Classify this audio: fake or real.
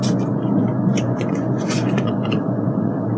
fake